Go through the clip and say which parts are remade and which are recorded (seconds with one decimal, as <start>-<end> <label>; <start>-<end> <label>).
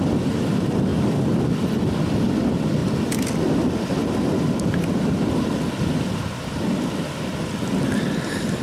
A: 0.0-8.6 recorded